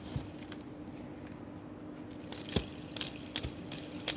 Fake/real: real